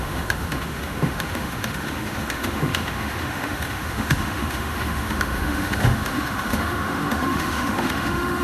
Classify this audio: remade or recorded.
remade